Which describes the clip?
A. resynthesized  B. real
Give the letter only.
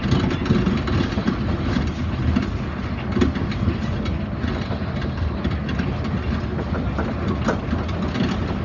B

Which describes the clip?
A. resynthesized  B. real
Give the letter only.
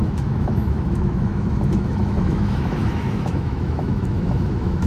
A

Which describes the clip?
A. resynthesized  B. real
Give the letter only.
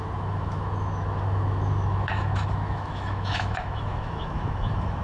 A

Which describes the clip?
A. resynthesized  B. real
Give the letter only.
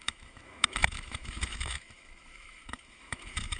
A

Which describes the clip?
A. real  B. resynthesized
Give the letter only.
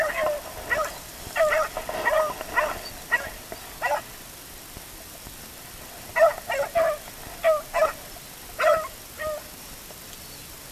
A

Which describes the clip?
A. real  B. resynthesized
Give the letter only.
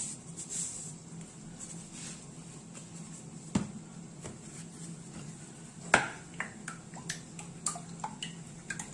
A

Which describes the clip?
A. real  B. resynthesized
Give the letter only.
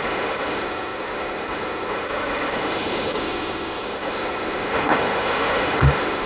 B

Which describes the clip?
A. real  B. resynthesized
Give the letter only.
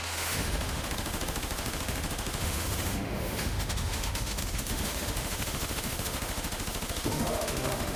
B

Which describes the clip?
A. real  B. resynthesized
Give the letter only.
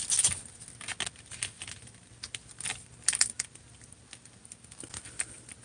A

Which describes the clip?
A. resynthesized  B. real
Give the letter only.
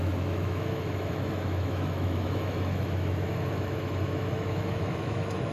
A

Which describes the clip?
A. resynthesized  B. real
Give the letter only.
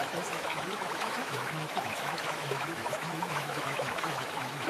A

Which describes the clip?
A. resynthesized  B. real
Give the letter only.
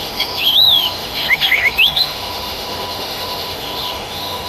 A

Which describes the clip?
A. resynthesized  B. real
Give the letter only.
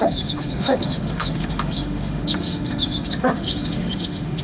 A